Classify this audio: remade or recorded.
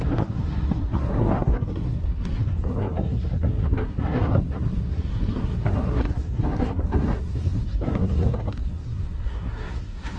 remade